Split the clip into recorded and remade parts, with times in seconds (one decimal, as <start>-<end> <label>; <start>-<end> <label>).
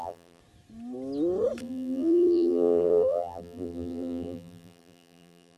0.0-0.4 remade; 0.4-1.6 recorded; 1.6-5.6 remade